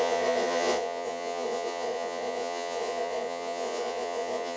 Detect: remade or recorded remade